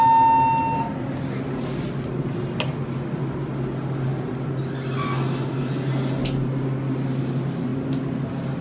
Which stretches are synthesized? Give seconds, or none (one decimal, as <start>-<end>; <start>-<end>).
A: none